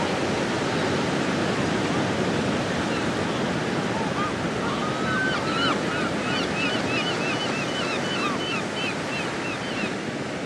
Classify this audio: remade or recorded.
recorded